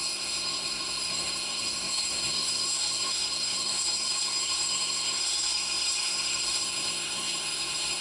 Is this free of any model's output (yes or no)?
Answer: no